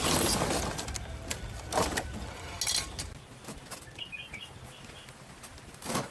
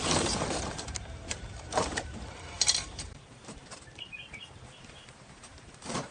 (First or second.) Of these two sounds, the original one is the first